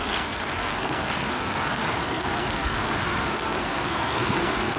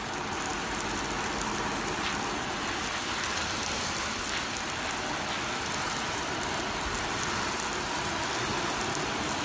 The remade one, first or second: first